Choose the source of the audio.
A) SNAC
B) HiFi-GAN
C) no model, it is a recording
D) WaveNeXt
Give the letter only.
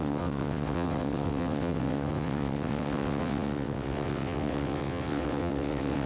D